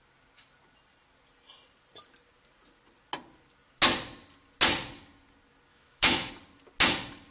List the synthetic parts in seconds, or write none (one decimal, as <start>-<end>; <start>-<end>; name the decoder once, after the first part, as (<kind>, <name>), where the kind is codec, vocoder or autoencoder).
5.7-6.3 (autoencoder, DAC-VAE)